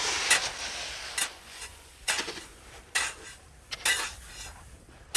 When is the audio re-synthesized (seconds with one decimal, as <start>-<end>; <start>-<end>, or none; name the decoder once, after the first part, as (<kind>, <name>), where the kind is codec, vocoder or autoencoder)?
1.3-2.6 (vocoder, Vocos)